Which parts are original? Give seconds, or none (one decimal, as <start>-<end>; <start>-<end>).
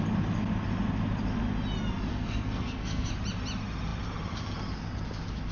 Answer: 0.0-2.1; 3.1-5.5